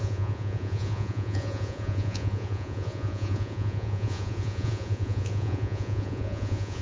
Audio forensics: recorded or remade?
remade